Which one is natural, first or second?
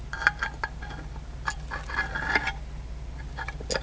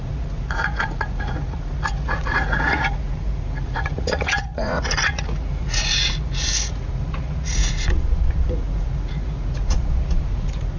first